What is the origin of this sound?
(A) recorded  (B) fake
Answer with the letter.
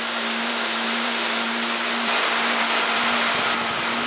B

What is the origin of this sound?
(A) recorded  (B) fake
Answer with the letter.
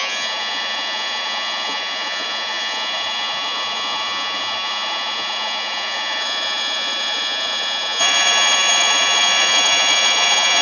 B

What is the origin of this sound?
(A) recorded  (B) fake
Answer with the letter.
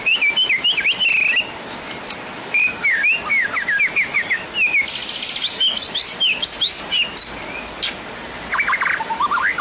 A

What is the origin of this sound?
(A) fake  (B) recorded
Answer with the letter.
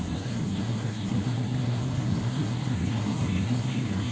A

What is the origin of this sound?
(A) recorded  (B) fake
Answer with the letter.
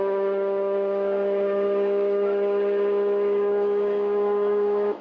B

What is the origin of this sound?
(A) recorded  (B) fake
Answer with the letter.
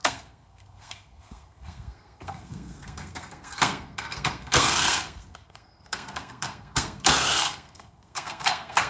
B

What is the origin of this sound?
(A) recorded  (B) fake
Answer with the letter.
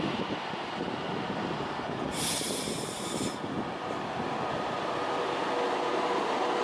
A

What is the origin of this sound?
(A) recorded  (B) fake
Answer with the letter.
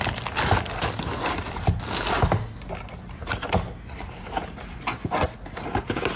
A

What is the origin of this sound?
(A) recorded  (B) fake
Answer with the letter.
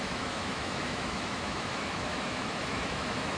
B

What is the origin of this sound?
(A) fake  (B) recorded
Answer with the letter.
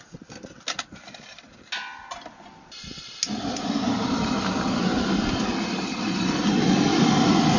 B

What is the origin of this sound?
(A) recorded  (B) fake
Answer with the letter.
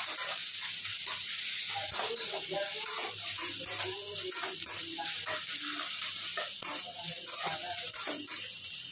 B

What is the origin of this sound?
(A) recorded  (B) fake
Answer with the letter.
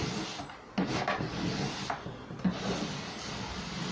A